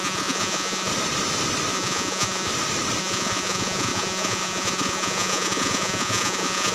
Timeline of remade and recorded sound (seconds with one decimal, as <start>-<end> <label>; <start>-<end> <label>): 0.0-0.9 remade; 0.9-1.7 recorded; 1.7-2.5 remade; 2.5-3.0 recorded; 3.0-6.7 remade